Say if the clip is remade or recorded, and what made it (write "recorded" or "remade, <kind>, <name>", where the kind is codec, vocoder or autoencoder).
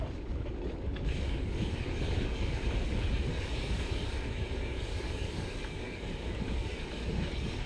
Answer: remade, codec, DAC